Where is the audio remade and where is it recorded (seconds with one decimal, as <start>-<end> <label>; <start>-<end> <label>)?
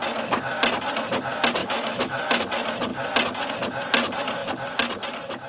0.0-1.6 recorded; 1.6-2.4 remade; 2.4-5.5 recorded